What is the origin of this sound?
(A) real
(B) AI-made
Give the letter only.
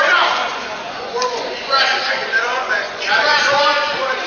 B